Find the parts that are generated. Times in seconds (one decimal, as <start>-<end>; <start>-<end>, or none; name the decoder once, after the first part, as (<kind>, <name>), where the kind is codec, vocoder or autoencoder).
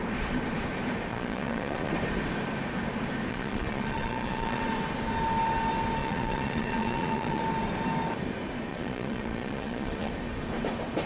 1.1-1.9 (vocoder, Vocos); 3.3-4.6; 6.0-7.4; 8.7-10.1